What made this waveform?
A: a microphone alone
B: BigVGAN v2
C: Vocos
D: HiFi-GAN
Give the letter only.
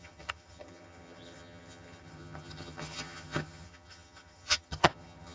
D